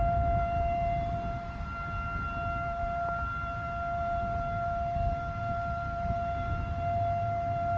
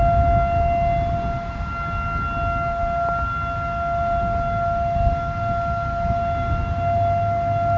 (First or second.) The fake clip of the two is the first